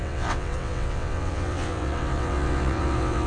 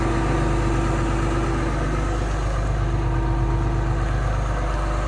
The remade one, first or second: first